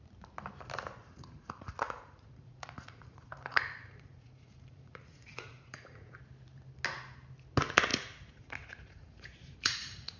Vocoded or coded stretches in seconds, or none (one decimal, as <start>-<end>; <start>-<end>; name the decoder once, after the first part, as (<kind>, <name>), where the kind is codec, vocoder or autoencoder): 1.0-6.2 (vocoder, Vocos); 7.9-10.2